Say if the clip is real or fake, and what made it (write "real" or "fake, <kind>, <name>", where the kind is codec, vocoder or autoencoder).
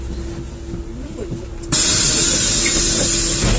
real